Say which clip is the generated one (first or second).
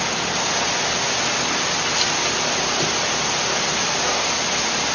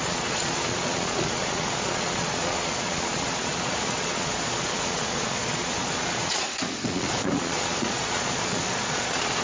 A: second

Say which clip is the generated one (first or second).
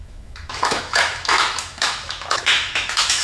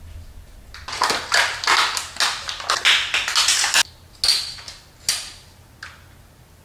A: first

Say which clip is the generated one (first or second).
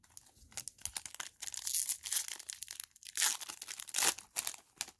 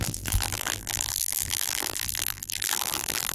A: second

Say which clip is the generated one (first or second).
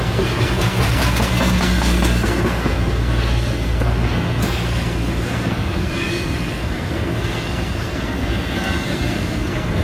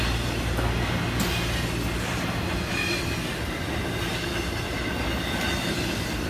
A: first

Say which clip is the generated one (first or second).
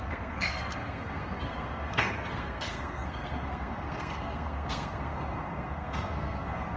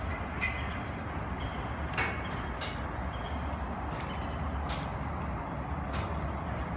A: first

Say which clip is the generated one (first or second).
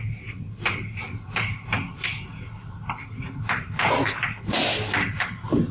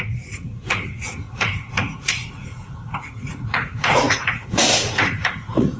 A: second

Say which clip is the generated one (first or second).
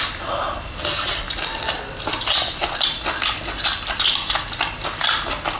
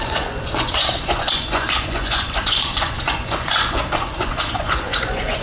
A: second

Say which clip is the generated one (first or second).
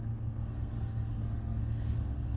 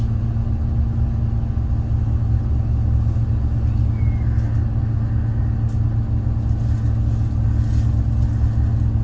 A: first